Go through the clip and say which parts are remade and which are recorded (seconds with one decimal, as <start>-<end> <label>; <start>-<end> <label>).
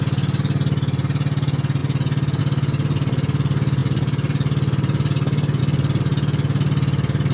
0.0-7.3 recorded